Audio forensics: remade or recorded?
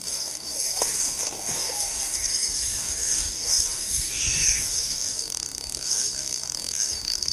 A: remade